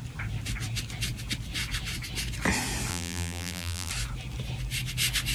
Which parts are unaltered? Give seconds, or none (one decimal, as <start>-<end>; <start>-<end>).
0.0-2.9; 3.9-5.3